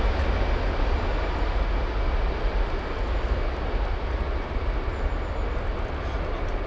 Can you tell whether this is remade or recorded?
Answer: recorded